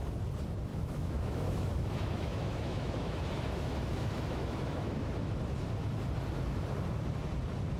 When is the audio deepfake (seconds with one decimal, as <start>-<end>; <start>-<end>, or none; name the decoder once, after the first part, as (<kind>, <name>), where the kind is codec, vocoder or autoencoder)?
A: 0.7-5.4 (autoencoder, DAC-VAE)